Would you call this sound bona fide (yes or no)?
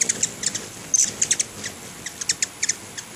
yes